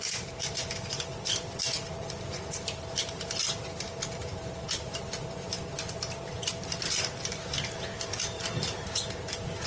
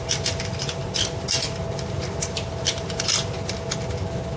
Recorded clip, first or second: second